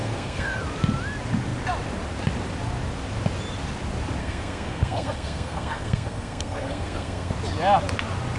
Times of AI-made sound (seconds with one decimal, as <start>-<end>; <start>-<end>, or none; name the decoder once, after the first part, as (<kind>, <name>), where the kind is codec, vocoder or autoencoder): 0.0-0.6 (codec, SNAC); 4.2-7.3